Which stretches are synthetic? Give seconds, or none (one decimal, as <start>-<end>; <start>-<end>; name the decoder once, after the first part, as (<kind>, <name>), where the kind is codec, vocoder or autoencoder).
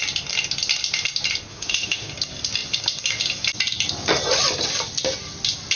1.5-2.1 (autoencoder, DAC-VAE)